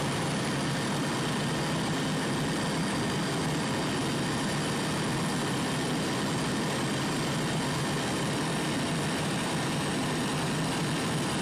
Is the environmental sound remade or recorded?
recorded